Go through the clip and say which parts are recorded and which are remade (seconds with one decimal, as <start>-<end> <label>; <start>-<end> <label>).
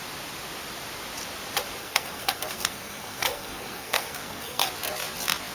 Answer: 0.0-1.8 recorded; 1.8-4.7 remade; 4.7-5.5 recorded